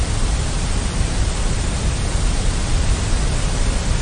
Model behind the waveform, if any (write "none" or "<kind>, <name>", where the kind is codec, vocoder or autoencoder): none